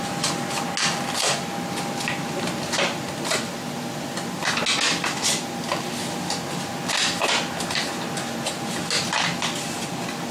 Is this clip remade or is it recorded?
recorded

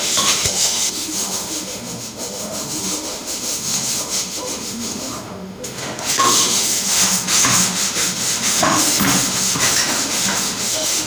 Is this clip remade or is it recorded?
remade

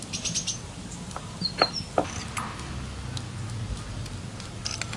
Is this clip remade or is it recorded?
recorded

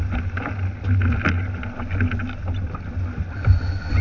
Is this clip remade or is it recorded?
recorded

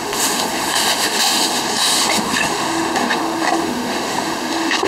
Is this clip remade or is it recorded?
remade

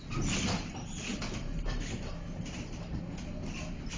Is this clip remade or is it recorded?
recorded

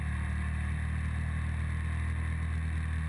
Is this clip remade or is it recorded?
recorded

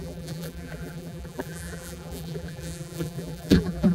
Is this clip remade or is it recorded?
remade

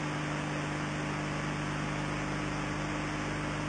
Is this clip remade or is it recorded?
recorded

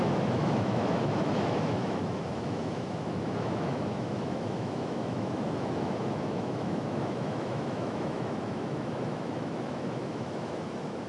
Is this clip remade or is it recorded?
remade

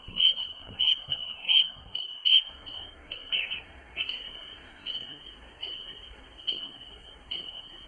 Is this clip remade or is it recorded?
remade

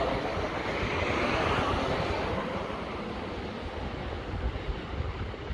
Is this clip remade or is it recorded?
recorded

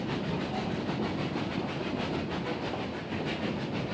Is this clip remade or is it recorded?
recorded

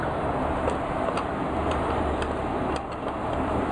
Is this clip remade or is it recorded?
recorded